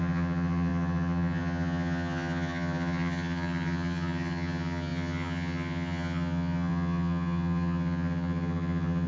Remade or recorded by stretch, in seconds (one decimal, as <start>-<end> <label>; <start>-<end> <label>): 0.0-9.1 remade